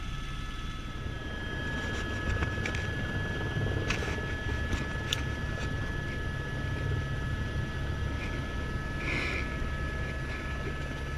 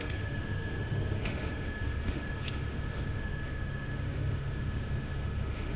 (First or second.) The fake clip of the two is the second